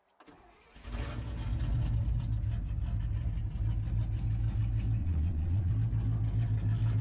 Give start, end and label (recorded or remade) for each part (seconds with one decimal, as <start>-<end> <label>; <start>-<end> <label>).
0.0-5.0 recorded; 5.0-5.7 remade; 5.7-7.0 recorded